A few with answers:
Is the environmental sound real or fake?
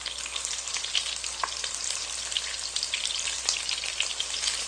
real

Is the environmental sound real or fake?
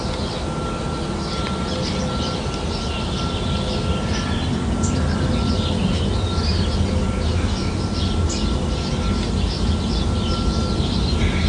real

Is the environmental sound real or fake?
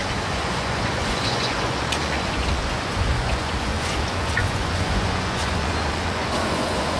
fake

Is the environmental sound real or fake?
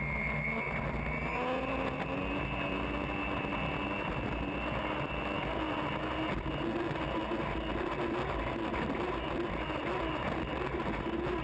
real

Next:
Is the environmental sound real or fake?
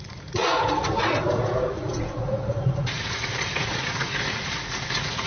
fake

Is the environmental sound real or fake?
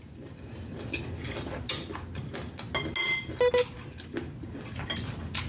real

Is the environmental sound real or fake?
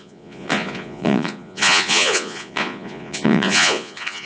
fake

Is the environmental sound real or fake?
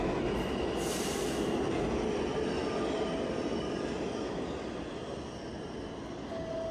real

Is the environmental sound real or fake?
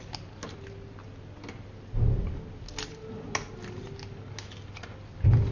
real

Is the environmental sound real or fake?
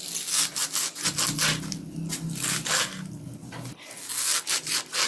real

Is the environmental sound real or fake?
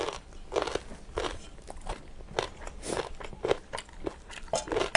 real